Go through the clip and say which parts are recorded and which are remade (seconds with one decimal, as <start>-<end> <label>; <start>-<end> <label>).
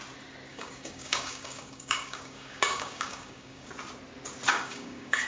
0.0-0.5 recorded; 0.5-3.7 remade; 3.7-4.5 recorded; 4.5-5.3 remade